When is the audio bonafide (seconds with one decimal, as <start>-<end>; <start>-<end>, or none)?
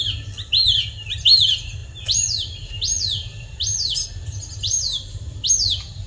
0.0-6.1